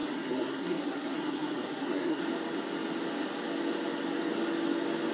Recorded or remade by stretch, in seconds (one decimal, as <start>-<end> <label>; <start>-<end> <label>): 0.0-2.2 remade; 2.2-5.1 recorded

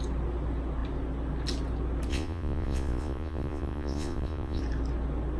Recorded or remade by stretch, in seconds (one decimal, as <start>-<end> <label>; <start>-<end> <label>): 0.0-2.1 recorded; 2.1-4.6 remade; 4.6-5.4 recorded